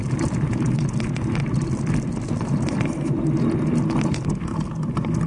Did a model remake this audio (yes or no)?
no